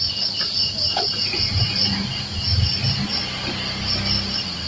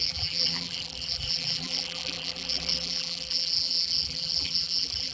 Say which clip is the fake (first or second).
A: second